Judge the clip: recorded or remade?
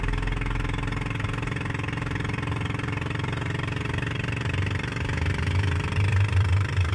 remade